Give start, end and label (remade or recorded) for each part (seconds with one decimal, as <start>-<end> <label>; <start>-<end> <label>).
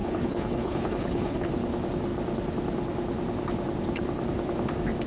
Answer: 0.0-1.5 remade; 1.5-5.1 recorded